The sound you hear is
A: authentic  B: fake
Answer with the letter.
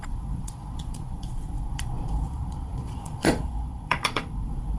B